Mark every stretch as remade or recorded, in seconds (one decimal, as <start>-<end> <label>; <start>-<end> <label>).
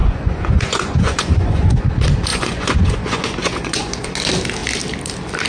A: 0.0-1.8 remade; 1.8-2.3 recorded; 2.3-4.1 remade; 4.1-5.5 recorded